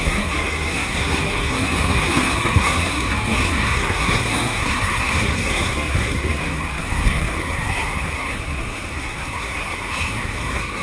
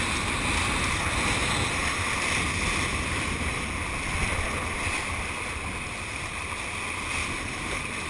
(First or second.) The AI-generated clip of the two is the first